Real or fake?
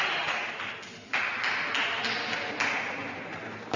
real